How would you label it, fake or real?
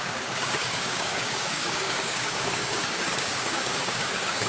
fake